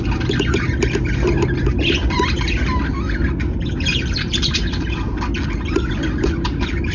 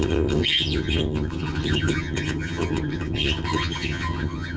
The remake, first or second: second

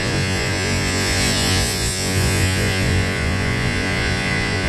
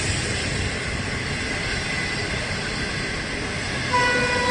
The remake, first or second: first